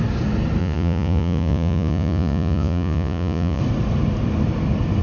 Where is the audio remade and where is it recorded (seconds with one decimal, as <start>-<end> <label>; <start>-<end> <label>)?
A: 0.0-0.6 recorded; 0.6-3.6 remade; 3.6-5.0 recorded